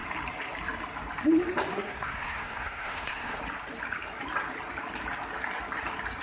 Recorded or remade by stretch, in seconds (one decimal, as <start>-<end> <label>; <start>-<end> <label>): 0.0-1.7 recorded; 1.7-3.4 remade; 3.4-6.2 recorded